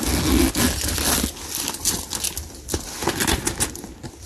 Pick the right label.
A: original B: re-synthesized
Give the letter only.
A